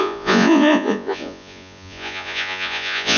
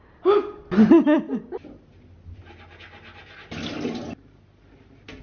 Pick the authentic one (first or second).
second